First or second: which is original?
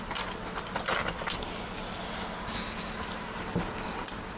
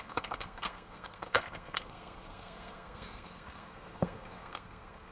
first